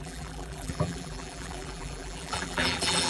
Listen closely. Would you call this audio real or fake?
fake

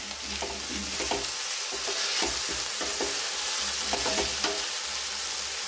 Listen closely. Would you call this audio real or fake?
real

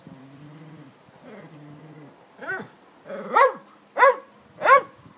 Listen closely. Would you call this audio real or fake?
real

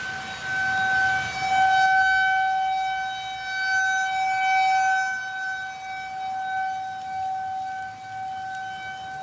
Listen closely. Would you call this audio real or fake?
real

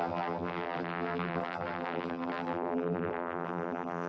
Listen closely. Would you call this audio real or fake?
fake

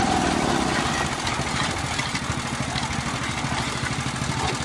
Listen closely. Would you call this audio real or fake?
real